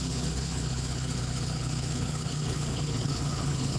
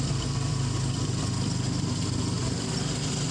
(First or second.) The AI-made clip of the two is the first